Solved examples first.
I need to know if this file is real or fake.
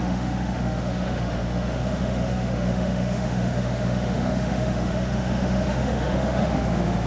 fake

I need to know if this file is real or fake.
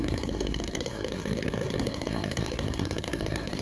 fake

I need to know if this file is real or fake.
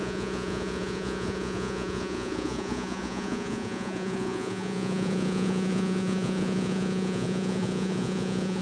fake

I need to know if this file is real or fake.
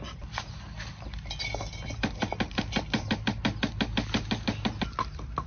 real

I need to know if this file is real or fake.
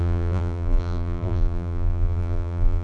fake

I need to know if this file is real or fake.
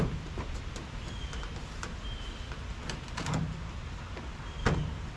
real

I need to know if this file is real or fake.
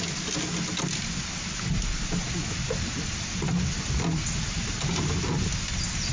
real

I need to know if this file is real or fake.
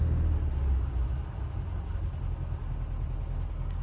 real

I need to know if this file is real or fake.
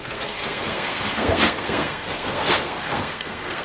fake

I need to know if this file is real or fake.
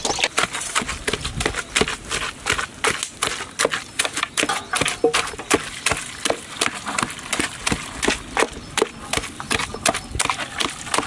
real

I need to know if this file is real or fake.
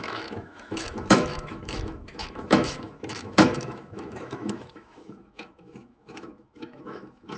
fake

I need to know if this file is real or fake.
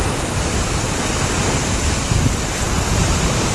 real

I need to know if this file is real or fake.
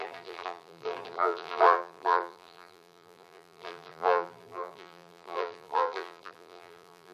fake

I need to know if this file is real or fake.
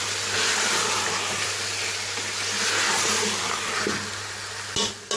real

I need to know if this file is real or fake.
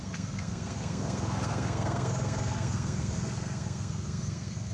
fake